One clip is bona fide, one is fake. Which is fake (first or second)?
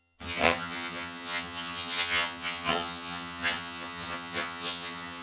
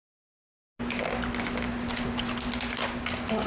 first